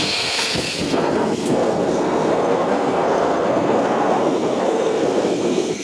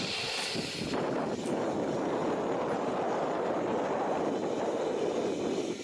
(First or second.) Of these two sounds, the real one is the second